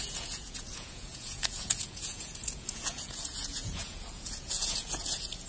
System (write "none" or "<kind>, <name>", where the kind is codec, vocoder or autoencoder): vocoder, Vocos